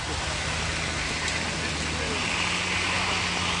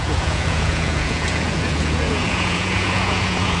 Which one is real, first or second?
first